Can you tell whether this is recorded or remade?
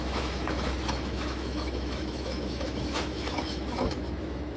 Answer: remade